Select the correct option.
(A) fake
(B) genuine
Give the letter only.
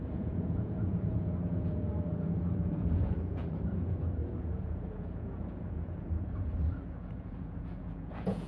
A